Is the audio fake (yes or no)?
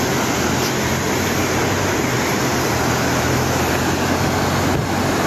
no